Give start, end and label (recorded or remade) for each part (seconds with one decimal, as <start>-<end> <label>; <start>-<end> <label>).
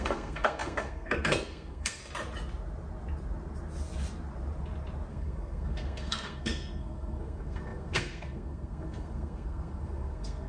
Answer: 0.0-2.0 remade; 2.0-5.1 recorded; 5.1-10.5 remade